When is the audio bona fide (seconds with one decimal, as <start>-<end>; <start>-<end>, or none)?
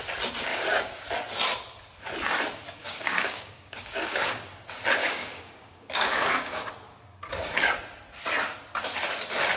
0.0-0.5; 1.0-2.8; 4.3-5.0; 6.7-9.6